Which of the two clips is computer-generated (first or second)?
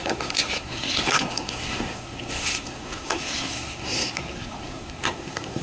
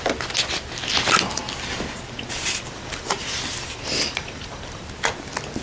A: first